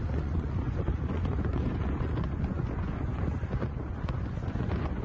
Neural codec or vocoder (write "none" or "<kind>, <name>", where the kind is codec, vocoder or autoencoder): vocoder, Vocos